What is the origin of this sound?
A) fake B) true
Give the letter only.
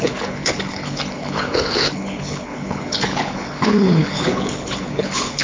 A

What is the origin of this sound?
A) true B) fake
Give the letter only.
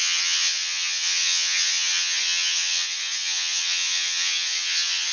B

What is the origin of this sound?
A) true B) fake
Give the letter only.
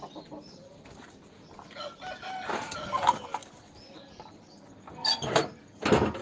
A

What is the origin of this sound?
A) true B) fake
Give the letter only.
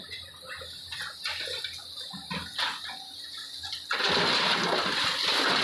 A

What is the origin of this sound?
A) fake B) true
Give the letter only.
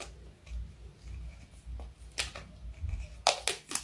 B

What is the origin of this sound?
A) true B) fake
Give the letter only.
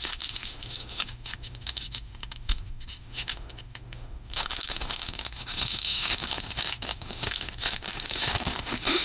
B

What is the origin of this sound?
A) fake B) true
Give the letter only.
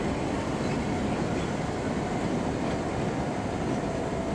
B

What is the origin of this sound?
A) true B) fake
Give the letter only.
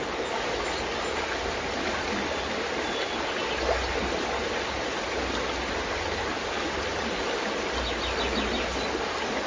A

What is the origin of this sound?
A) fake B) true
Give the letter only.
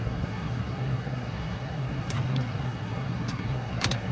A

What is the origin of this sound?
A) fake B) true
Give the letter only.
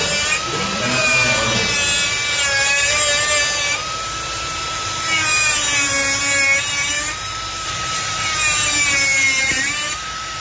A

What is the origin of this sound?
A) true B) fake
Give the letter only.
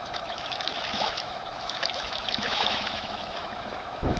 B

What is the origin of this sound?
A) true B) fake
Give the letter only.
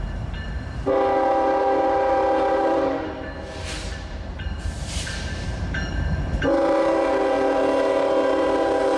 B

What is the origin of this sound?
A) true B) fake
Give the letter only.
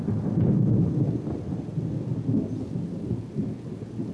A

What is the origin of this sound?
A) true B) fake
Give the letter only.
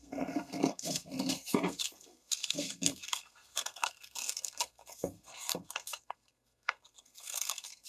B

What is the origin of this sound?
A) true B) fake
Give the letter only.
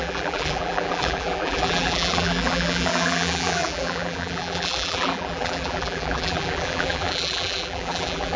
B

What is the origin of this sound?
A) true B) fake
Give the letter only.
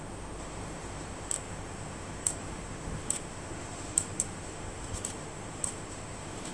B